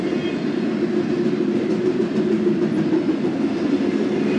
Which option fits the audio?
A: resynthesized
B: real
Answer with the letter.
B